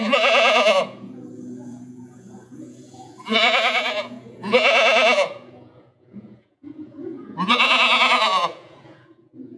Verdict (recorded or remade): remade